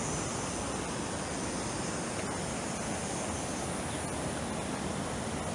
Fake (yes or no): no